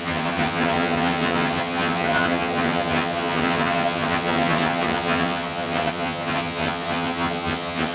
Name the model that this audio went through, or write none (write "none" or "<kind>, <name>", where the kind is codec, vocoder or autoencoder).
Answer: vocoder, HiFi-GAN